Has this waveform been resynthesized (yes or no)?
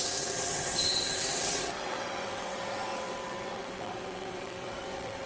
yes